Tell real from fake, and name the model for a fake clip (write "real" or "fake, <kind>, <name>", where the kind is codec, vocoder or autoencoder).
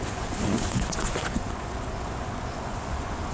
fake, vocoder, Vocos